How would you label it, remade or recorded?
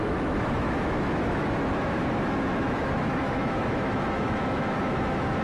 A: remade